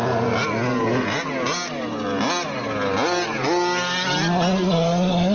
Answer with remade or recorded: recorded